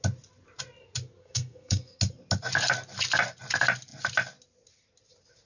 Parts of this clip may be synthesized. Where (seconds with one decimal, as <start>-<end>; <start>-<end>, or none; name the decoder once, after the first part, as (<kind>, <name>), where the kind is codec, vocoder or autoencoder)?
1.2-2.0 (codec, SNAC)